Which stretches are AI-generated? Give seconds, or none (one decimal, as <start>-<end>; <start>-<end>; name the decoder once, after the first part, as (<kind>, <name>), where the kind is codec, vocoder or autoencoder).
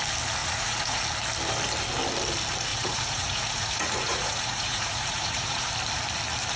0.4-1.0 (vocoder, Vocos); 2.7-5.7